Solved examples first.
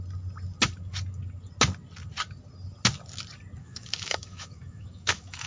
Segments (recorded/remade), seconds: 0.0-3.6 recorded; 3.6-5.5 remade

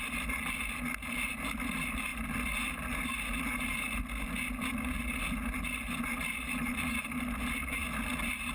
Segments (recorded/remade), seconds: 0.0-8.5 recorded

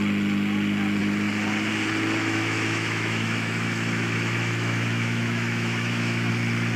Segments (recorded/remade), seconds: 0.0-2.2 recorded; 2.2-6.3 remade; 6.3-6.8 recorded

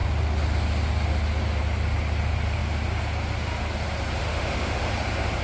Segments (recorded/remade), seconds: 0.0-4.2 recorded; 4.2-4.9 remade; 4.9-5.4 recorded

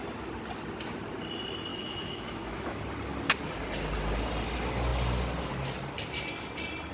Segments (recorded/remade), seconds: 0.0-1.7 recorded; 1.7-2.8 remade; 2.8-6.9 recorded

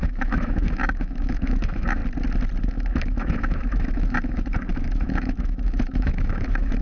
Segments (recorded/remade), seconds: 0.0-2.0 remade; 2.0-2.6 recorded; 2.6-6.8 remade

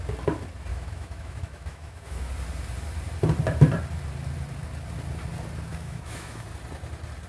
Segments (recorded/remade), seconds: 0.0-0.7 recorded; 0.7-2.3 remade; 2.3-5.7 recorded; 5.7-6.4 remade; 6.4-7.3 recorded